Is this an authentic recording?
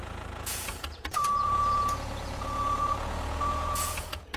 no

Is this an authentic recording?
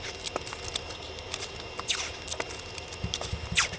yes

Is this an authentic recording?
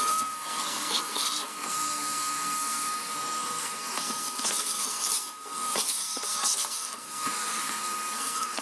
no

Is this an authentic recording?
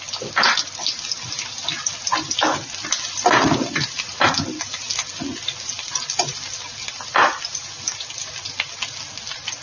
yes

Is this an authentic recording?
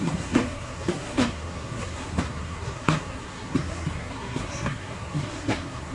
no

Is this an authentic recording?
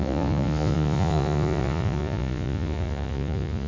no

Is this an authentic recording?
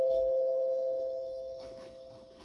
no